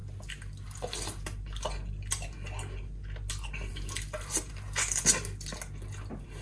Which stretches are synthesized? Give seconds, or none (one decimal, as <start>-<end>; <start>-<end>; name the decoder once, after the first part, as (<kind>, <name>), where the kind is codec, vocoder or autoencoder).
none